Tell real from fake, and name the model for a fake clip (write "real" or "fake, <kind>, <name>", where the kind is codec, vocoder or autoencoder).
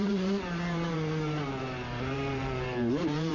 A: fake, vocoder, BigVGAN v2